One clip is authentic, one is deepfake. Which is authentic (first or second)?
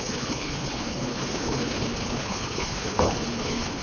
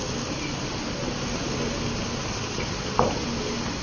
second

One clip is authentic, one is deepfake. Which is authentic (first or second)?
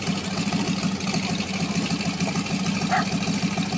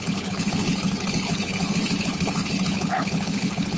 first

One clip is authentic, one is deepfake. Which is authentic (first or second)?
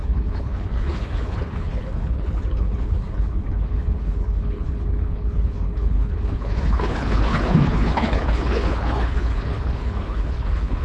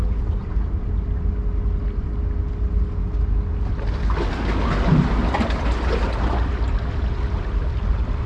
second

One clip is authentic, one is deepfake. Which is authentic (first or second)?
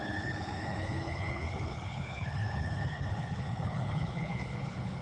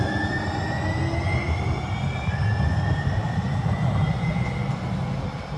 second